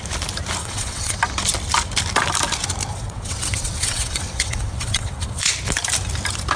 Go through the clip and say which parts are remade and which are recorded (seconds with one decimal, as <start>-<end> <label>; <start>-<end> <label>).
0.0-0.6 recorded; 0.6-1.2 remade; 1.2-2.9 recorded; 2.9-5.5 remade; 5.5-6.6 recorded